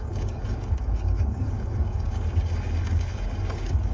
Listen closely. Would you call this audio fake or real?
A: fake